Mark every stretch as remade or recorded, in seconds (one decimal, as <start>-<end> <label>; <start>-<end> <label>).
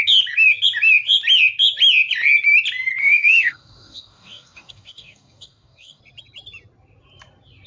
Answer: 0.0-3.0 recorded; 3.0-6.0 remade; 6.0-7.7 recorded